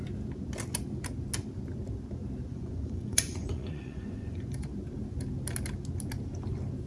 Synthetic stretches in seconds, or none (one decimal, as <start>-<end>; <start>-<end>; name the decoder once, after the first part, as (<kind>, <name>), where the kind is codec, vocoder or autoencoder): 2.5-4.7 (vocoder, Vocos)

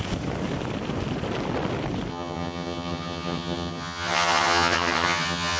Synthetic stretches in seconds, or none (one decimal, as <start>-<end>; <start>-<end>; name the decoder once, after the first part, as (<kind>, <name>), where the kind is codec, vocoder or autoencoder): 2.1-5.6 (vocoder, HiFi-GAN)

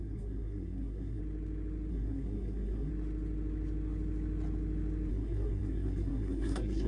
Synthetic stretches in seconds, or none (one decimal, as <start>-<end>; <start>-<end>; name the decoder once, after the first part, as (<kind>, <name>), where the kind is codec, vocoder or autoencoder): 0.0-1.2 (codec, SNAC); 1.9-2.9; 5.1-6.9

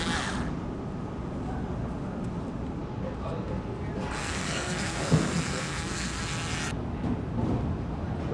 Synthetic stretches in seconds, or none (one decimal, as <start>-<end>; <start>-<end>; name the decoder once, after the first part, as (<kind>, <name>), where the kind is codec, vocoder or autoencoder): 4.2-6.2 (codec, SNAC)

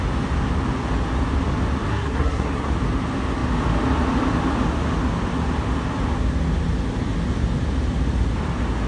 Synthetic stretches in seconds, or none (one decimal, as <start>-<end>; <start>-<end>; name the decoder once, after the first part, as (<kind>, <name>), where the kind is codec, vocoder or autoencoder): 1.9-2.7 (codec, SNAC)

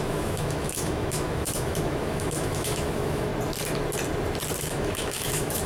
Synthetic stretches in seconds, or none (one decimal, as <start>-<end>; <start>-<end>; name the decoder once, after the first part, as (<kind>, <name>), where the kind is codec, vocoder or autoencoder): 0.0-3.3 (autoencoder, DAC-VAE); 4.6-5.7